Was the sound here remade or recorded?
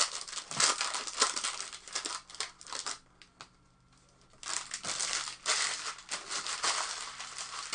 recorded